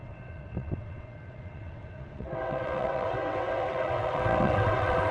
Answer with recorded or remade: remade